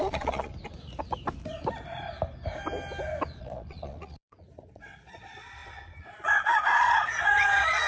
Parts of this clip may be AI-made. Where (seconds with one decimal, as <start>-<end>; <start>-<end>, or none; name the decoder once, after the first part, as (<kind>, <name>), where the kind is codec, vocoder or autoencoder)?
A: 0.0-0.5 (vocoder, Vocos); 3.4-7.9